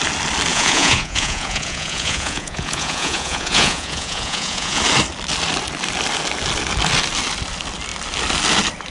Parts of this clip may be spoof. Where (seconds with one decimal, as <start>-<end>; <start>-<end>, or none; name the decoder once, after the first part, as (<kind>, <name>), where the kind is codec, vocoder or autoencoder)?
0.5-4.8 (vocoder, Vocos)